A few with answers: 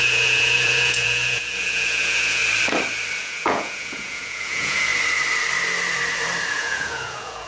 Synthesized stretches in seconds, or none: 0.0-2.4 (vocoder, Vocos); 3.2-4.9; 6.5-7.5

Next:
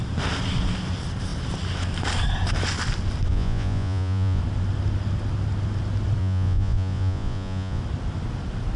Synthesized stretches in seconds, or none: 3.3-4.4 (vocoder, Vocos); 6.2-7.8

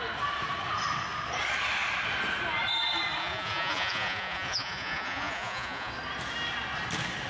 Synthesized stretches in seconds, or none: 3.2-5.9 (vocoder, Vocos)

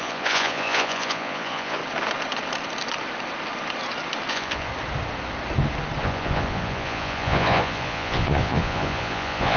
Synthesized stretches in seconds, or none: 0.0-1.8 (vocoder, Vocos); 4.3-4.7; 6.0-9.6

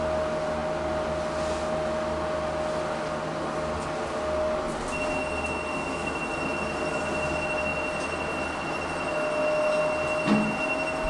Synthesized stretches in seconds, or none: none

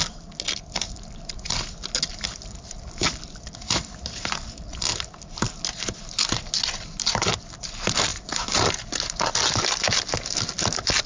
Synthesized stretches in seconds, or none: none